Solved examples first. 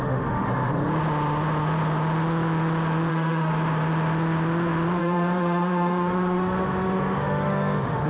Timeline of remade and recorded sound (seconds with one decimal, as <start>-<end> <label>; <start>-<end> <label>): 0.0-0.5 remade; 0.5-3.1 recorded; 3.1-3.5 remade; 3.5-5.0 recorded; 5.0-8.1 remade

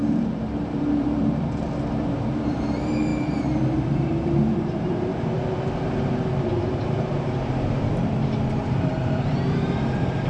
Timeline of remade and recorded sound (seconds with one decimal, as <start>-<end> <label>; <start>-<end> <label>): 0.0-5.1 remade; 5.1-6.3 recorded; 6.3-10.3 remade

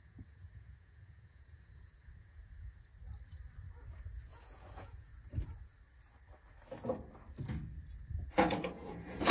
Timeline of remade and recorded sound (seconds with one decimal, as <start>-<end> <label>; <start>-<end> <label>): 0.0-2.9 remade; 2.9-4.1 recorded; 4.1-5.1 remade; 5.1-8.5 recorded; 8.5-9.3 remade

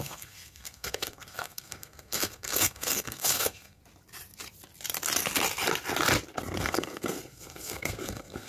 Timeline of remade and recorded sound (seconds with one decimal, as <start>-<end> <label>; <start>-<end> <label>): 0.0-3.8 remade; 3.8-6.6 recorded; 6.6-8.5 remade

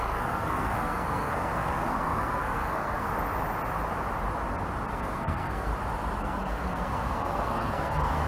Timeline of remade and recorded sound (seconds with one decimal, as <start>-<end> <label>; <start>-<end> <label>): 0.0-3.1 remade; 3.1-4.9 recorded; 4.9-5.7 remade; 5.7-6.2 recorded; 6.2-8.3 remade

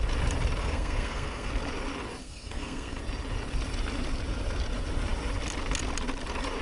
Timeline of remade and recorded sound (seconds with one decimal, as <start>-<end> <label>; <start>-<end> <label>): 0.0-0.6 recorded; 0.6-1.5 remade; 1.5-2.2 recorded; 2.2-3.0 remade; 3.0-6.6 recorded

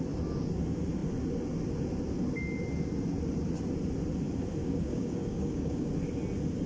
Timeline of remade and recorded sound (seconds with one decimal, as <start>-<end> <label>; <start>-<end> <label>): 0.0-4.6 recorded; 4.6-5.9 remade; 5.9-6.7 recorded

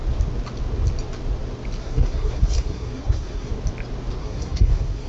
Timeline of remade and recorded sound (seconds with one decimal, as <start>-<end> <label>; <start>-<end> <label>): 0.0-1.8 recorded; 1.8-3.5 remade; 3.5-4.2 recorded; 4.2-5.1 remade